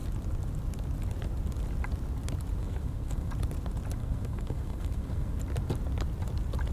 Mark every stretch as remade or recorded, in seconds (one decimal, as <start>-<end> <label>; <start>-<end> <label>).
0.0-2.6 recorded; 2.6-3.3 remade; 3.3-4.0 recorded; 4.0-5.4 remade; 5.4-6.7 recorded